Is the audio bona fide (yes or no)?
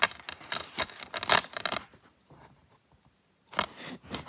yes